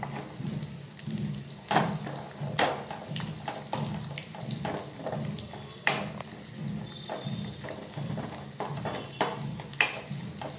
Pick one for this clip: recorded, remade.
recorded